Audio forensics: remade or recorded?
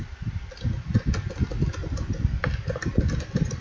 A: recorded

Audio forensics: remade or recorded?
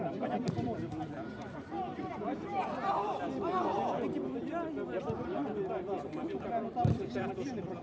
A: remade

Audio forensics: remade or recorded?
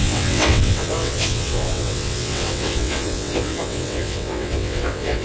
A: remade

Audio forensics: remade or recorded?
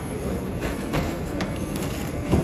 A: remade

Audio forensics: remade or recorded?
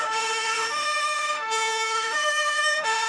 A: remade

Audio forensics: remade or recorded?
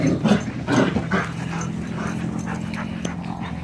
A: recorded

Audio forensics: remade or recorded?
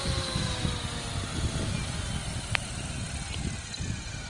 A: recorded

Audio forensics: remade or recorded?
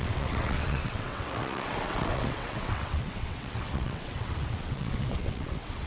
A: remade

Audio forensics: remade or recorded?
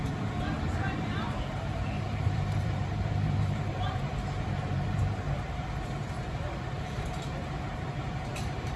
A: remade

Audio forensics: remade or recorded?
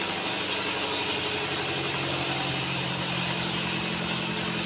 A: recorded